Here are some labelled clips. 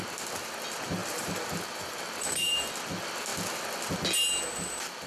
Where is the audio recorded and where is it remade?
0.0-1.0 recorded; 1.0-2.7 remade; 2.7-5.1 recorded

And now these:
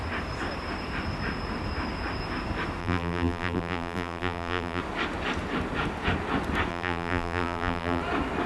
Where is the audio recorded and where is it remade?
0.0-2.8 recorded; 2.8-4.8 remade; 4.8-6.7 recorded; 6.7-8.0 remade; 8.0-8.5 recorded